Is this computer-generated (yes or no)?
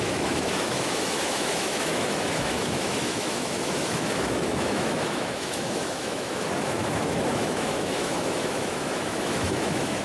yes